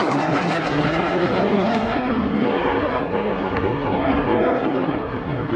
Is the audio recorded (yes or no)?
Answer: no